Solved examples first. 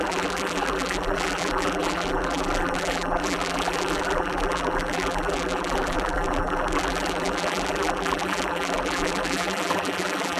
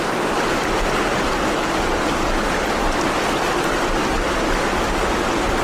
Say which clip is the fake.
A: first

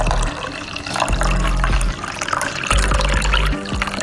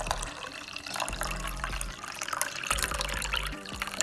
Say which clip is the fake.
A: second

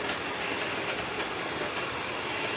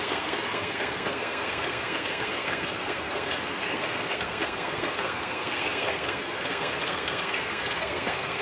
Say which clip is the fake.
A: second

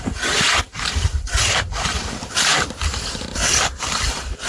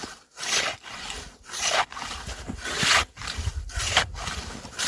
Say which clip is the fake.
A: first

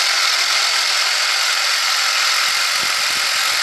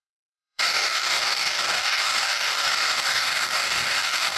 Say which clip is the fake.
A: second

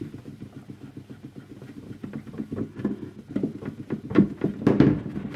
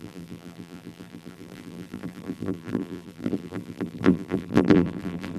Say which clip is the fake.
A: second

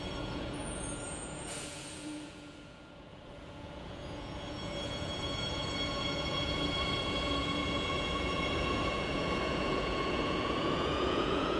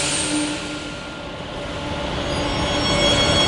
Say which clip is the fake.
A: first